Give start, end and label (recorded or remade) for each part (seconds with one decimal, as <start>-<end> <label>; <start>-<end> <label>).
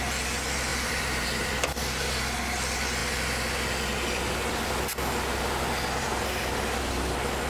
0.0-0.7 recorded; 0.7-1.5 remade; 1.5-7.5 recorded